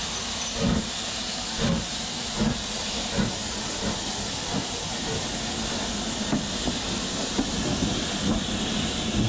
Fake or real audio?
real